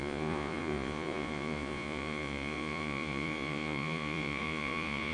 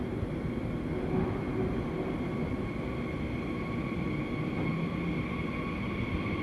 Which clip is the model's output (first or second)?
first